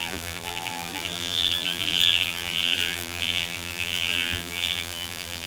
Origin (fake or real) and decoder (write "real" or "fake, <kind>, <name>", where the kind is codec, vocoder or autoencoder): fake, vocoder, BigVGAN v2